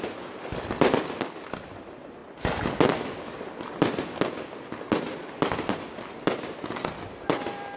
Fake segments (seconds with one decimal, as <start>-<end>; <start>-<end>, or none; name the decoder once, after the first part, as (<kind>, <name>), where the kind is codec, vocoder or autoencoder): none